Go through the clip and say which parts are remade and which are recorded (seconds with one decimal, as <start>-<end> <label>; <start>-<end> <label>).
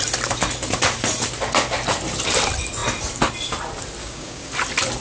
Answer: 0.0-4.0 recorded; 4.0-4.5 remade; 4.5-5.0 recorded